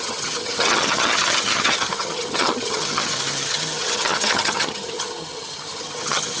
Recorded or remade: remade